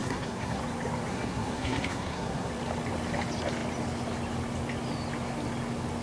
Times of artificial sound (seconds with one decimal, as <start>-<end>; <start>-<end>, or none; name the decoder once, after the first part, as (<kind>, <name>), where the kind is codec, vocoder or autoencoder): 0.0-0.6 (codec, SNAC); 1.1-2.5